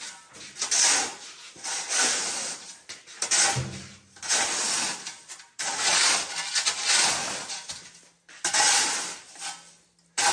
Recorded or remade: recorded